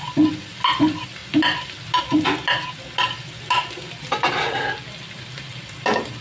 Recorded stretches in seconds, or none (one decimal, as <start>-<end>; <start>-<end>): 0.0-6.2